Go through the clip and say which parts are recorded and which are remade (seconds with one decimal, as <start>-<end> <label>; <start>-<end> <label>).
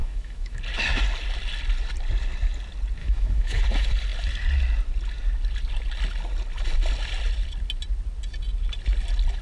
0.0-0.6 remade; 0.6-3.0 recorded; 3.0-3.6 remade; 3.6-9.4 recorded